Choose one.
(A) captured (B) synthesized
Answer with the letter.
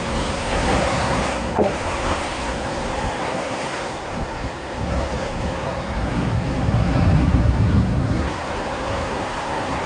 B